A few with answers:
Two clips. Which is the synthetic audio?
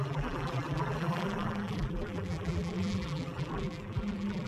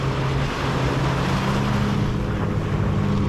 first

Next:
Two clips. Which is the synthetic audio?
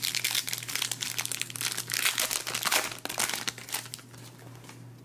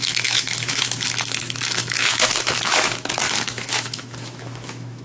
second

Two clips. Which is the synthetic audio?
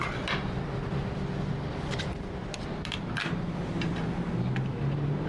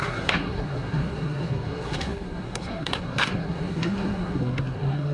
second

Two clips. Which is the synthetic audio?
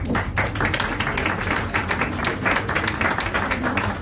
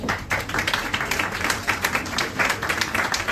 second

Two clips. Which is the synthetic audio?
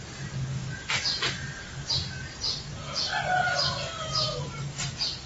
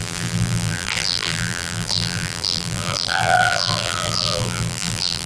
second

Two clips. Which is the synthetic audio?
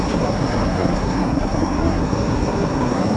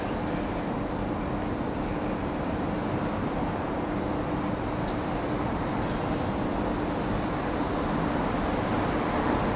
first